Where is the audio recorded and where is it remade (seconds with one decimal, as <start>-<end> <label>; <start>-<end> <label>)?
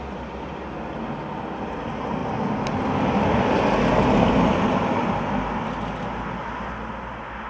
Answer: 0.0-7.5 recorded